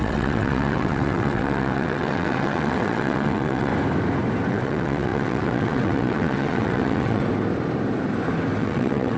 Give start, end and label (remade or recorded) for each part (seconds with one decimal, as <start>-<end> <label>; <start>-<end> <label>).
0.0-3.7 remade; 3.7-4.5 recorded; 4.5-7.2 remade; 7.2-8.6 recorded; 8.6-9.2 remade